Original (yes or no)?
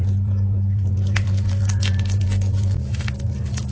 yes